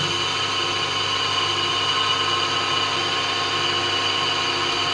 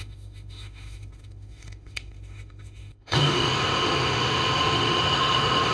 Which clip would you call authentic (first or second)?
first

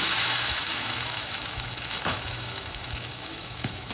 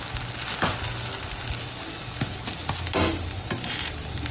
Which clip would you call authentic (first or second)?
second